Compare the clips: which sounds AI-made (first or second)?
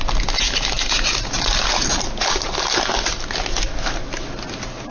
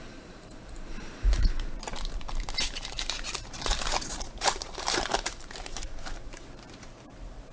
second